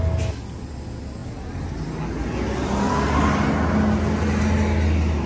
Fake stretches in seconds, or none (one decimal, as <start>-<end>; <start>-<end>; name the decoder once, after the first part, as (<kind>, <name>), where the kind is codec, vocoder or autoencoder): none